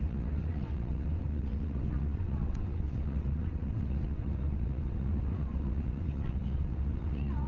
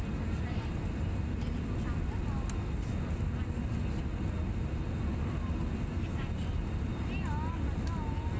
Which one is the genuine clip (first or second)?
second